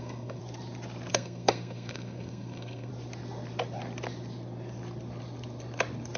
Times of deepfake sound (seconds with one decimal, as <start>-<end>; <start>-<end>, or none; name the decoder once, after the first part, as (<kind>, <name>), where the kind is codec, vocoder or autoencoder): 0.0-0.4 (codec, SNAC); 1.1-2.9